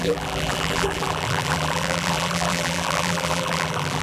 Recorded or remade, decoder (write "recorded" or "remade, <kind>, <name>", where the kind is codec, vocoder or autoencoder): remade, vocoder, BigVGAN v2